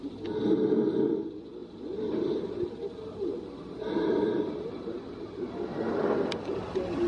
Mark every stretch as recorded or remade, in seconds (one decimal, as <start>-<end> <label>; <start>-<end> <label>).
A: 0.0-7.1 recorded